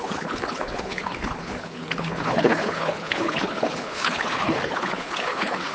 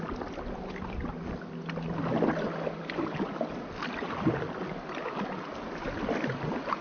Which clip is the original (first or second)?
second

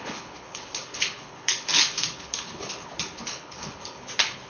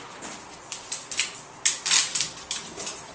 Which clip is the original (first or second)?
second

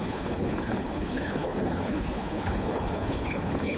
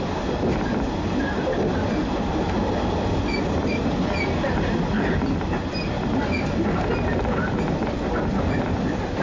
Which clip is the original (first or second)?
second